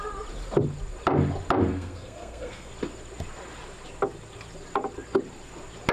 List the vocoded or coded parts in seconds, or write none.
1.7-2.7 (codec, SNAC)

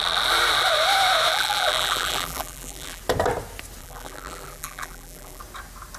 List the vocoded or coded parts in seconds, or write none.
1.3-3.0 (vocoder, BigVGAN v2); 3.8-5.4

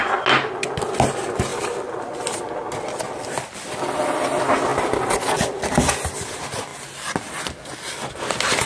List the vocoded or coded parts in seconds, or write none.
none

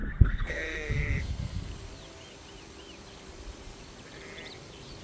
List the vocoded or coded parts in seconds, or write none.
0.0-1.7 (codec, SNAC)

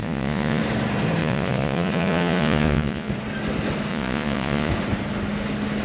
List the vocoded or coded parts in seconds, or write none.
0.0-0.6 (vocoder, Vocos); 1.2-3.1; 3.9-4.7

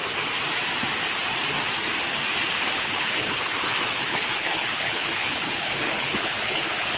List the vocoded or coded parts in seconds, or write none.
2.5-7.0 (codec, HILCodec)

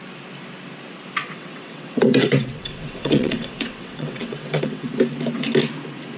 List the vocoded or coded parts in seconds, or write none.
1.2-4.9 (vocoder, WaveNeXt)

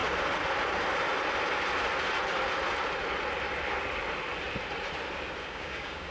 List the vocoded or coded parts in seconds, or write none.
5.4-6.1 (codec, DAC)